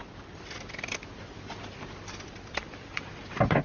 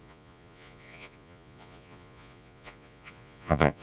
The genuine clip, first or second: first